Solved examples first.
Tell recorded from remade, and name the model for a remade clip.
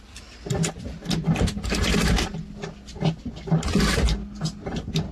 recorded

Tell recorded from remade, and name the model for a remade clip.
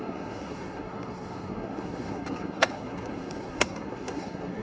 remade, codec, SNAC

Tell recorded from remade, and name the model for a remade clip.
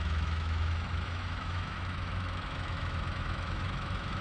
remade, autoencoder, DAC-VAE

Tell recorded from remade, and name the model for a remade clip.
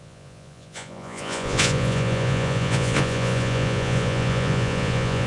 remade, vocoder, Vocos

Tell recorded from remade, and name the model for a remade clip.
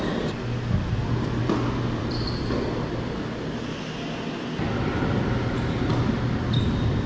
recorded